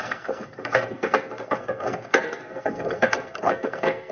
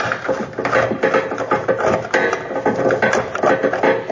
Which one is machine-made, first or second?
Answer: first